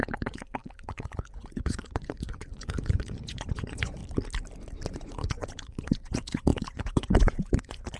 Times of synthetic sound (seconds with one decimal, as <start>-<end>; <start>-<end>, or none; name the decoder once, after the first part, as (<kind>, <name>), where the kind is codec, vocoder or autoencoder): 0.0-4.0 (vocoder, Vocos); 4.9-8.0